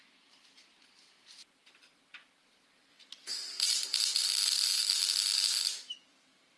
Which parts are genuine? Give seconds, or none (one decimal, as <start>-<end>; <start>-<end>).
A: none